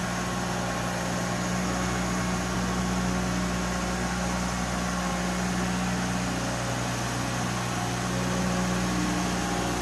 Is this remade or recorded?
recorded